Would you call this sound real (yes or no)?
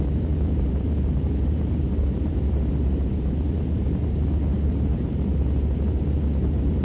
no